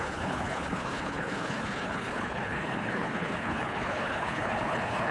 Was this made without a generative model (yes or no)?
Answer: no